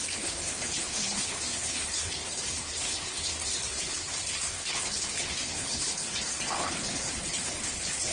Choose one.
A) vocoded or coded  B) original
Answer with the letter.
A